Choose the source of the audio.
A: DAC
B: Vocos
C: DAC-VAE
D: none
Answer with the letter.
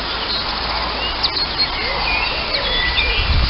D